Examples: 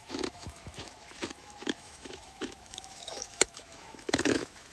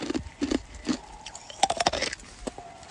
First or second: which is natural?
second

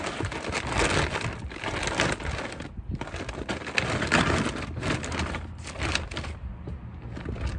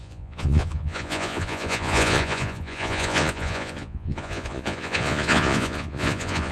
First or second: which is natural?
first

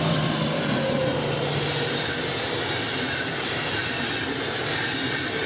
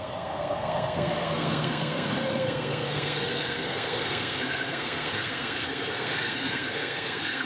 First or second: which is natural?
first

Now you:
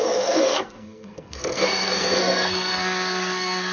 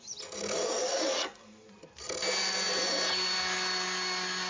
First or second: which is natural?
second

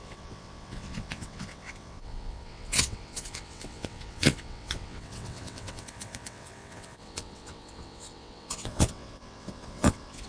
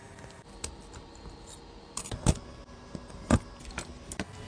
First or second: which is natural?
second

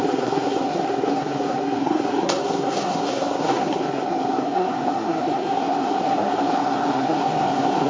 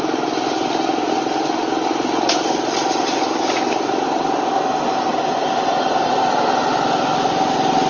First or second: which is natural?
second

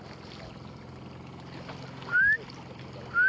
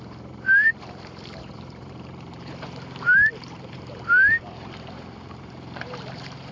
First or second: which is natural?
first